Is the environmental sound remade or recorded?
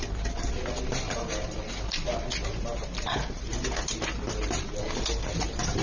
recorded